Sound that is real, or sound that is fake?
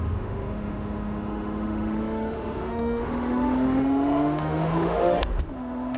fake